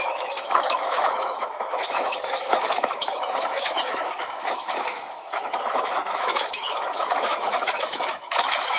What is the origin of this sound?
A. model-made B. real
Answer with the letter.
A